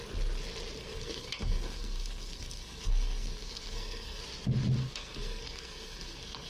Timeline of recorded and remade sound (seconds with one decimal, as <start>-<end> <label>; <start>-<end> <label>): 0.0-0.8 recorded; 0.8-4.2 remade; 4.2-4.8 recorded; 4.8-6.5 remade